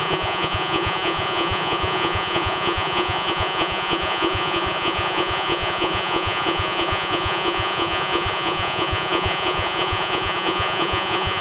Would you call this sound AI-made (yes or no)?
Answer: yes